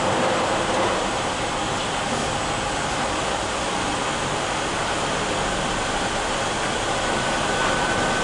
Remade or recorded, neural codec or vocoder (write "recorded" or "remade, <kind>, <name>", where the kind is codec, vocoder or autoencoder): recorded